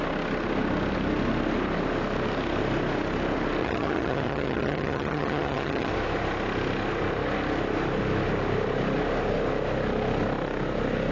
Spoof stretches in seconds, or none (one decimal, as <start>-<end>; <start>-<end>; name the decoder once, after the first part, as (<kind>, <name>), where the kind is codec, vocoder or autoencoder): 3.6-5.9 (vocoder, HiFi-GAN)